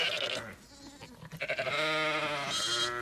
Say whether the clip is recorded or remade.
recorded